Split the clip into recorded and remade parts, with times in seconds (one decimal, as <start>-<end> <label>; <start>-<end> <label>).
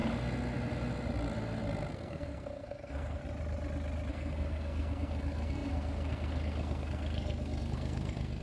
0.0-1.9 recorded; 1.9-3.2 remade; 3.2-4.1 recorded; 4.1-8.4 remade